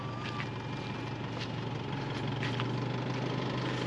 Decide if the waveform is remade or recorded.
recorded